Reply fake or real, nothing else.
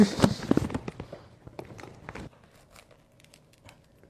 fake